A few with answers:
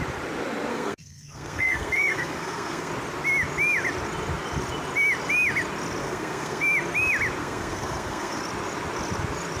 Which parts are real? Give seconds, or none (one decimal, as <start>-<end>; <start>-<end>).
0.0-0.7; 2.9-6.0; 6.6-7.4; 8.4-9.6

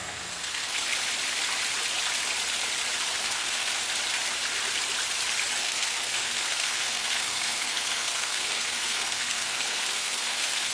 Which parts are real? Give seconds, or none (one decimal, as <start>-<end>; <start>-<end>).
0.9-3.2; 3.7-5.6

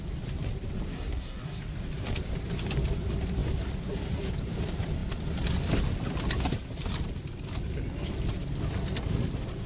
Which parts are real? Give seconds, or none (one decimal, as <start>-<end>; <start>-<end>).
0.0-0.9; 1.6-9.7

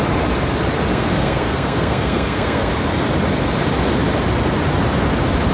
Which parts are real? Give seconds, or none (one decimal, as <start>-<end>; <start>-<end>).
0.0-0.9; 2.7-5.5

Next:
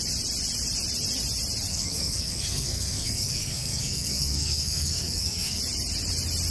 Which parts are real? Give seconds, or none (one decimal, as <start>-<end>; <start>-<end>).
0.0-1.7; 5.6-6.5

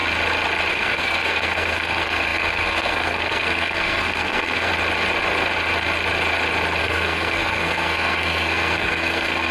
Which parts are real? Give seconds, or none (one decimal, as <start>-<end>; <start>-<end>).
0.0-0.7; 4.7-6.8

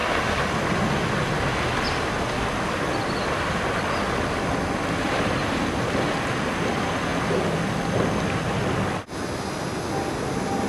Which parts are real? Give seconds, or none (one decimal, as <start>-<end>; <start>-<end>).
0.0-10.7